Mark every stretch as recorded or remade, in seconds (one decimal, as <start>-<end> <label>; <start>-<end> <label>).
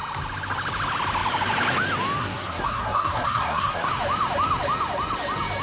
0.0-2.2 recorded; 2.2-3.9 remade; 3.9-5.6 recorded